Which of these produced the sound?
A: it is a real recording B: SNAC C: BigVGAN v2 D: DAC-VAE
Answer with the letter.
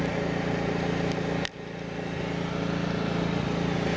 A